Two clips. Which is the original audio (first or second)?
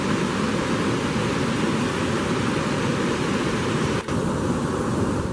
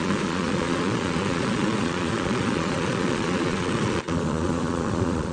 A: first